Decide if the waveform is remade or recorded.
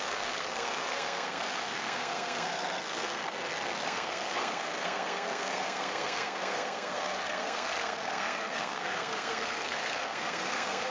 remade